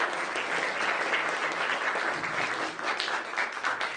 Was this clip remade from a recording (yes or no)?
no